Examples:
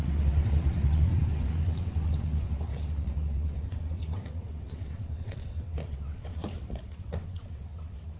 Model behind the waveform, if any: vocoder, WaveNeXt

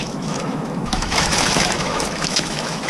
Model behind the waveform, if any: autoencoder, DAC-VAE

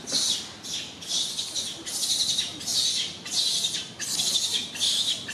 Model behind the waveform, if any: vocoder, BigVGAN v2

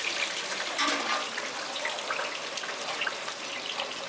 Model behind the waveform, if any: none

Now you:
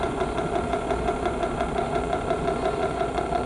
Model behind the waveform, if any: vocoder, Vocos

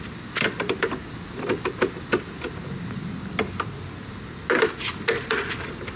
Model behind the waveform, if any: vocoder, BigVGAN v2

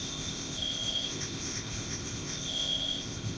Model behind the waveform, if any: codec, ZipCodec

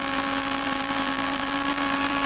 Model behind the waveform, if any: vocoder, BigVGAN v2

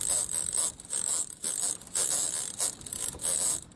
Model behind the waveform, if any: none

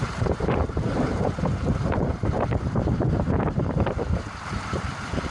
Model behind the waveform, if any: vocoder, BigVGAN v2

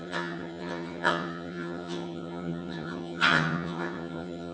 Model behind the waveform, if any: vocoder, HiFi-GAN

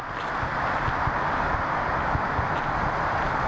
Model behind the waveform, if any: none